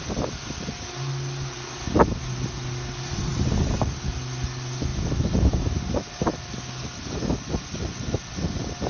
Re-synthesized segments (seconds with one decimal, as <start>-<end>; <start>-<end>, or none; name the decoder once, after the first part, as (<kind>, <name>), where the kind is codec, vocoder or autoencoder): none